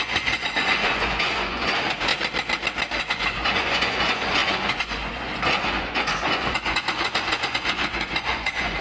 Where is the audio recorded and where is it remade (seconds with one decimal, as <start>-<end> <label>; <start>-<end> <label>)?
0.0-2.1 remade; 2.1-3.0 recorded; 3.0-8.8 remade